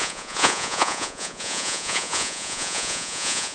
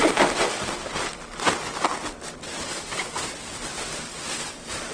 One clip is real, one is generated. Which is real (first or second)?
second